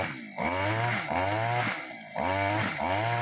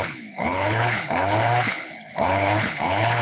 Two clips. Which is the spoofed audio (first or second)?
second